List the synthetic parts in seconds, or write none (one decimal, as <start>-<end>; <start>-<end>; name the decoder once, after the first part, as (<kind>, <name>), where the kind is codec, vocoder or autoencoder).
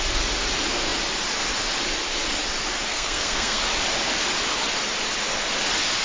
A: 2.9-3.6 (codec, SNAC)